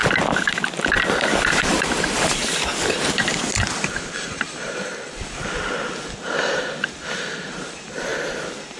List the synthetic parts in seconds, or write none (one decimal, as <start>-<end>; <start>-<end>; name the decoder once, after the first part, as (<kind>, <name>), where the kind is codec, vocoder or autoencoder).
1.5-2.4 (vocoder, BigVGAN v2); 3.7-4.9; 7.0-8.1